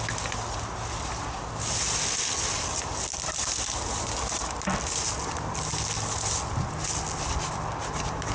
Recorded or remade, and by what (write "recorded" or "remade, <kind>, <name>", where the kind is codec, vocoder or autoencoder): recorded